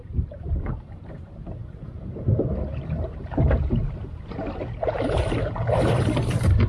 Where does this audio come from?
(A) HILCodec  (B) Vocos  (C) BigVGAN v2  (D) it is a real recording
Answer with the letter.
C